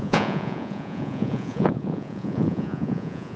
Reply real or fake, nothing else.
fake